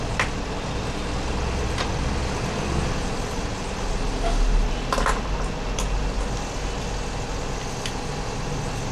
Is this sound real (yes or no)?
yes